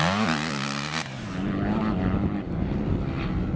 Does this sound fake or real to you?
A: real